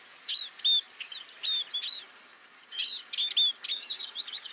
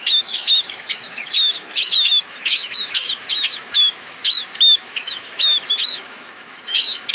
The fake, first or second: second